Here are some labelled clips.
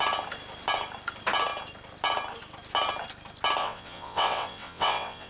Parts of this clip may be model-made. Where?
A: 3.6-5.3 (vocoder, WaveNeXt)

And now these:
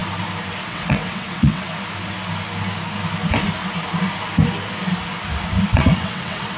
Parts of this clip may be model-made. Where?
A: 0.7-1.7 (vocoder, WaveNeXt); 5.7-6.6